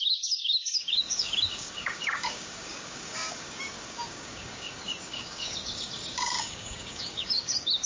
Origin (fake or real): fake